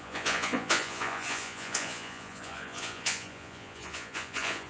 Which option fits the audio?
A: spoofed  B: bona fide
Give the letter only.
A